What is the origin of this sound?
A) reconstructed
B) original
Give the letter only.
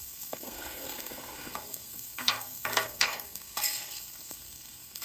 A